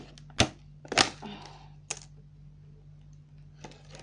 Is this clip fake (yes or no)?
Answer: no